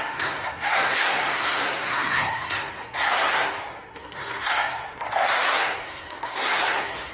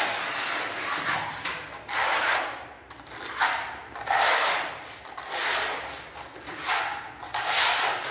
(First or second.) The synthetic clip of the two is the first